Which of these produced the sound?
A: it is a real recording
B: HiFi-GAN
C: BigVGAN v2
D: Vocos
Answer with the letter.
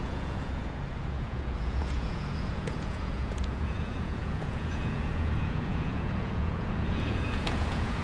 D